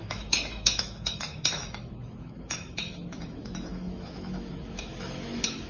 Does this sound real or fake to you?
fake